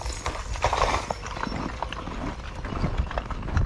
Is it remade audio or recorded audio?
recorded